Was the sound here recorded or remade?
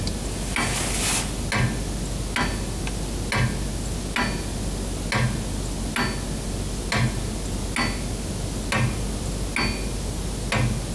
recorded